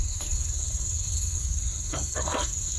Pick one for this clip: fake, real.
fake